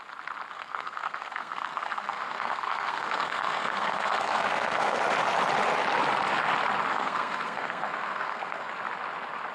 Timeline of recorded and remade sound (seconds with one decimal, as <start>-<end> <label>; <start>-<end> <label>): 0.0-0.5 recorded; 0.5-5.0 remade; 5.0-6.9 recorded; 6.9-8.7 remade; 8.7-9.5 recorded